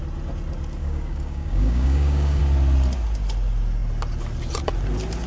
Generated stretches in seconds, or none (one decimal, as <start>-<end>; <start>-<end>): 0.8-2.4